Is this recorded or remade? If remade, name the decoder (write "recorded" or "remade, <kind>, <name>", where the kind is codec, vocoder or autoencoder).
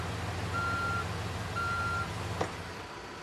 recorded